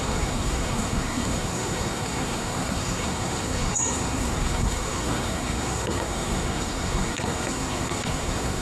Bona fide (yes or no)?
no